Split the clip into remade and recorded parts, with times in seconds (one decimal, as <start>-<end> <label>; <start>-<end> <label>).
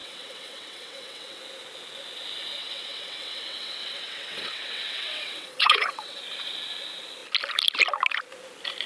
0.0-1.4 remade; 1.4-2.6 recorded; 2.6-6.2 remade; 6.2-8.9 recorded